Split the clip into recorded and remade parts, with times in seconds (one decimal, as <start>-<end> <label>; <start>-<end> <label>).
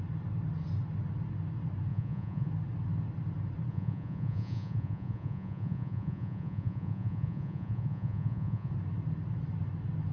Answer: 0.0-1.9 recorded; 1.9-2.5 remade; 2.5-3.7 recorded; 3.7-8.7 remade; 8.7-10.1 recorded